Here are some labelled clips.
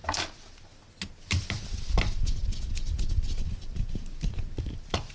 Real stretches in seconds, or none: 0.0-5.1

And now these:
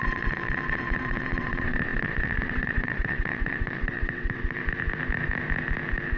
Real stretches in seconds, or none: 4.6-6.2

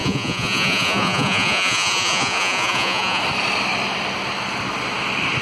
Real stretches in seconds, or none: 3.2-5.4

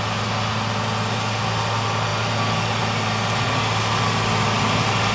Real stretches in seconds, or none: 0.0-5.1